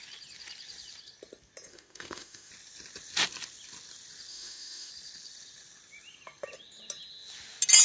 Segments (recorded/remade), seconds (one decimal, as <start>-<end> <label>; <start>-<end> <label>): 0.0-1.7 recorded; 1.7-2.5 remade; 2.5-4.3 recorded; 4.3-4.9 remade; 4.9-7.8 recorded